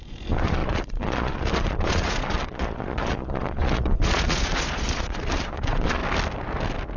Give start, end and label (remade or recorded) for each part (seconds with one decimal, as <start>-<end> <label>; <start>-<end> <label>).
0.0-6.0 remade; 6.0-7.0 recorded